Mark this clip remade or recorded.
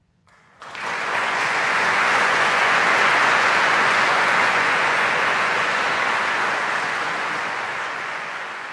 remade